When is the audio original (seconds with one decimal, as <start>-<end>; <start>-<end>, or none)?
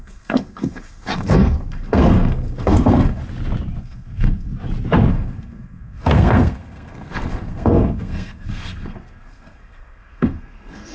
3.2-3.8; 4.5-5.1